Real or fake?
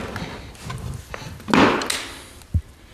real